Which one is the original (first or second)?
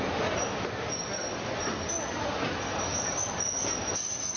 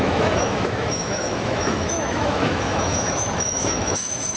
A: first